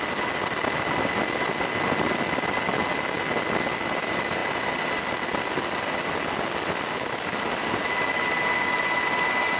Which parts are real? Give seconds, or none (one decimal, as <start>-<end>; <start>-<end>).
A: 0.0-9.6

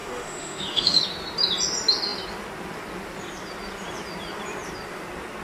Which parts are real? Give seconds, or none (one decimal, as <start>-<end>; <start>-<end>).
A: 1.0-5.4

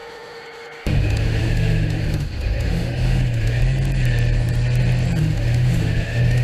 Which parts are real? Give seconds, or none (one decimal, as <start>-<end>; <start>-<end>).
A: 3.6-5.2

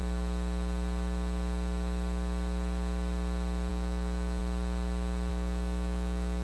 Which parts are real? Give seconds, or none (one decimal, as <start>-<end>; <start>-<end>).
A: 0.0-3.7; 4.4-5.3

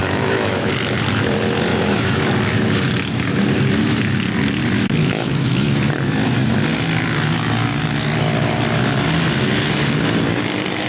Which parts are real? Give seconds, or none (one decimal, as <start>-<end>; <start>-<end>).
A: 0.7-1.7; 2.3-5.0; 5.9-10.9

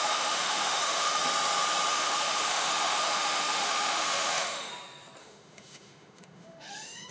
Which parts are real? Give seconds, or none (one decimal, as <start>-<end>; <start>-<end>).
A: 1.2-1.9; 4.7-5.2